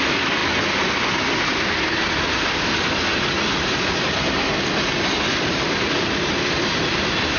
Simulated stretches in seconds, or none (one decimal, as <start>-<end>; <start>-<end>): 0.4-2.2